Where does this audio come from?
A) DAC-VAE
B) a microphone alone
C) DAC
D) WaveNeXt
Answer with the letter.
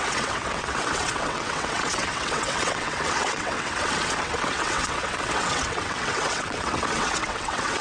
D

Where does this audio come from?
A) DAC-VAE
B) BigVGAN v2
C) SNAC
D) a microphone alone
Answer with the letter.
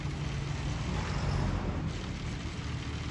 D